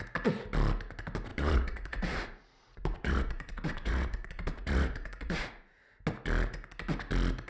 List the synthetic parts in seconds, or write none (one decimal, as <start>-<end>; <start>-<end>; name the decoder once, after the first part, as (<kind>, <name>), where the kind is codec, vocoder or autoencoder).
1.3-5.8 (vocoder, Vocos)